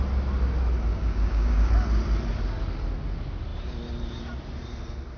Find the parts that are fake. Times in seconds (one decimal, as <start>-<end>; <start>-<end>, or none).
0.9-1.7